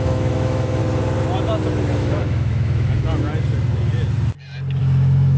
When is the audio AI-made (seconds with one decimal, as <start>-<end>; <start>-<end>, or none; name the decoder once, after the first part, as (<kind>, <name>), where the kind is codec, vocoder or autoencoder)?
0.0-0.8 (autoencoder, DAC-VAE); 2.0-3.3; 4.8-5.4